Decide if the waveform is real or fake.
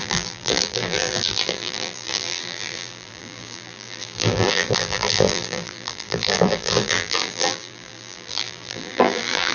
fake